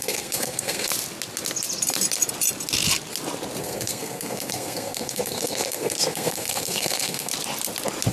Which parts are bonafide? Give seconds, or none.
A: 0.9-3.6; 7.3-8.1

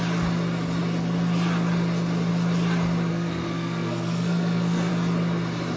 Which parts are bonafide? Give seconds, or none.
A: 0.0-3.1; 4.9-5.8

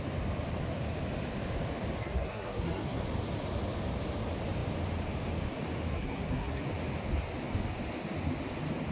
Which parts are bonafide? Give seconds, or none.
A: 0.0-2.0; 3.0-5.9; 6.6-8.9

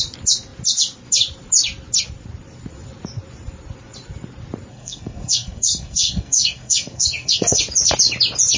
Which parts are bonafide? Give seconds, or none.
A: 0.0-4.7; 7.6-8.6